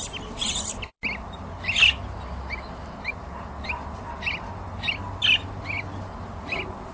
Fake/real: real